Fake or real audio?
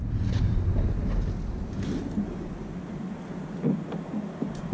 real